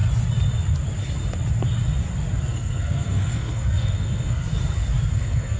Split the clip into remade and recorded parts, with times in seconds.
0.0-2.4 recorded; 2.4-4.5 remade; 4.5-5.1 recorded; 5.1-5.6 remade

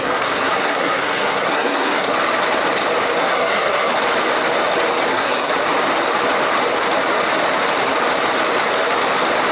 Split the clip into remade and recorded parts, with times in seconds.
0.0-2.1 remade; 2.1-3.2 recorded; 3.2-3.9 remade; 3.9-5.1 recorded; 5.1-5.5 remade; 5.5-9.5 recorded

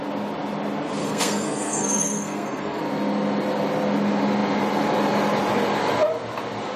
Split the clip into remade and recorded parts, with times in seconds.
0.0-1.0 recorded; 1.0-2.8 remade; 2.8-6.8 recorded

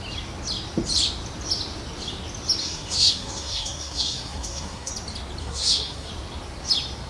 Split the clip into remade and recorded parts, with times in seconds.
0.0-2.6 recorded; 2.6-4.9 remade; 4.9-5.4 recorded; 5.4-6.1 remade; 6.1-7.1 recorded

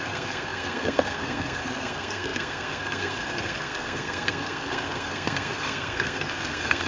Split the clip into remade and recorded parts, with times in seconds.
0.0-6.9 remade

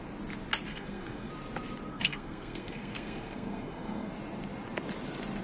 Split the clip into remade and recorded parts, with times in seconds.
0.0-0.7 recorded; 0.7-1.3 remade; 1.3-1.9 recorded; 1.9-4.1 remade; 4.1-5.4 recorded

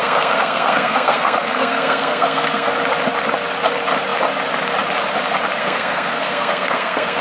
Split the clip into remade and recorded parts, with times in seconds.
0.0-2.7 remade; 2.7-5.6 recorded; 5.6-7.2 remade